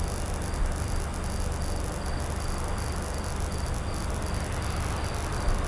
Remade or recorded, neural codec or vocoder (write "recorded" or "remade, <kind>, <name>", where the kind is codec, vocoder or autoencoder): recorded